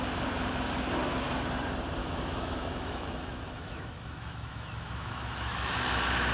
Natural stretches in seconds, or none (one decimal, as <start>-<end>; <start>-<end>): 0.0-2.0; 5.8-6.3